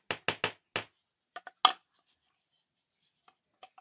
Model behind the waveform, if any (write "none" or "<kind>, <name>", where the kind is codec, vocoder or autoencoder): none